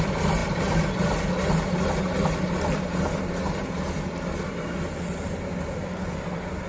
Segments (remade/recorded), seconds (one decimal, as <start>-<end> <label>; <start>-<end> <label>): 0.0-6.7 recorded